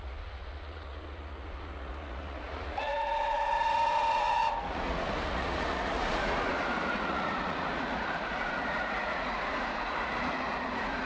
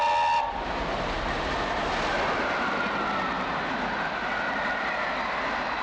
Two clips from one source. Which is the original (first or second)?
second